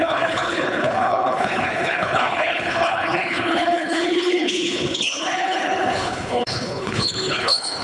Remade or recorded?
remade